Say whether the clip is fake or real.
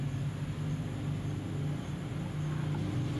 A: real